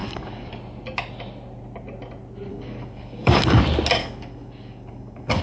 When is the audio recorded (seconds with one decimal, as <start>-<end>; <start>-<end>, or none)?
0.5-2.5; 3.6-4.0